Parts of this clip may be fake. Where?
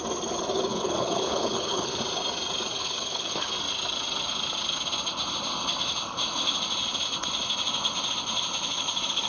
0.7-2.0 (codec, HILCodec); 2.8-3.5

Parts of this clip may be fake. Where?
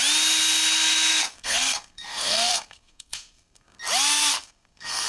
1.1-3.8 (codec, SNAC); 4.3-5.1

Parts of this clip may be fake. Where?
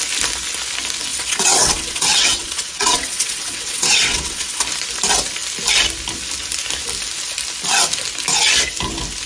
1.1-4.6 (vocoder, WaveNeXt)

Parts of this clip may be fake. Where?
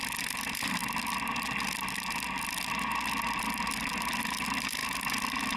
0.0-0.8 (vocoder, BigVGAN v2); 4.2-5.6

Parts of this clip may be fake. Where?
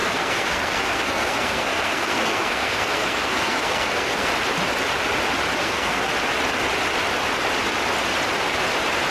0.0-4.3 (codec, SNAC); 5.6-6.1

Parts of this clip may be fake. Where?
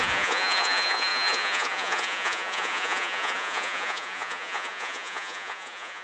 0.0-6.0 (vocoder, Vocos)